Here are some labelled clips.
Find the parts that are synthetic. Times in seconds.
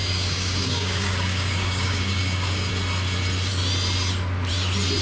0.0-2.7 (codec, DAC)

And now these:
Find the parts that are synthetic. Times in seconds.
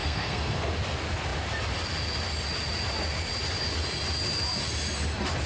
0.0-0.7 (codec, SNAC)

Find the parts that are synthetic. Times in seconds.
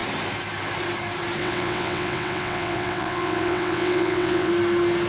1.4-4.5 (vocoder, WaveNeXt)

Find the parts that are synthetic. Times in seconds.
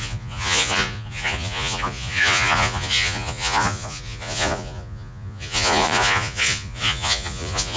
0.0-7.8 (vocoder, Vocos)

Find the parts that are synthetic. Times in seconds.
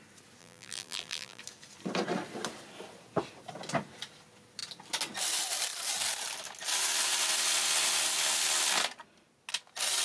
0.4-1.4 (vocoder, BigVGAN v2)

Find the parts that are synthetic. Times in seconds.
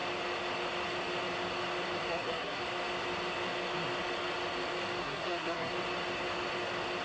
2.1-2.6 (codec, SNAC); 5.0-5.7